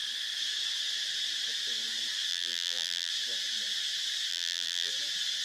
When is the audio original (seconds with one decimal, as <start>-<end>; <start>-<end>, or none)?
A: 0.0-2.3; 3.1-4.3; 4.9-5.4